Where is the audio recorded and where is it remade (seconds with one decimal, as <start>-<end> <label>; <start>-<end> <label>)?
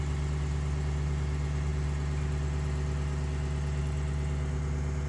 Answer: 0.0-5.1 recorded